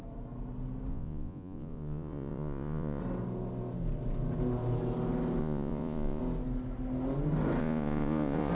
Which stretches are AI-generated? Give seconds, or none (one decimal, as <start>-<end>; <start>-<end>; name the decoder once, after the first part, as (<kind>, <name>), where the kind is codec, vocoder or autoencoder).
0.9-3.0 (vocoder, Vocos); 5.4-6.2; 7.6-8.5